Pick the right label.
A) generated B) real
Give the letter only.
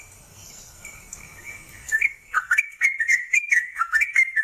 A